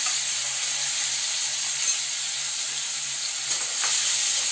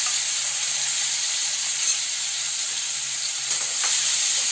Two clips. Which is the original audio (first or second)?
first